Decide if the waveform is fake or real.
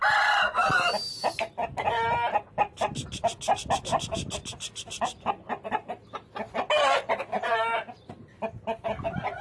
real